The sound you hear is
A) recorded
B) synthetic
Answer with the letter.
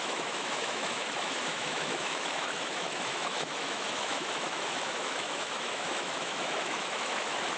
B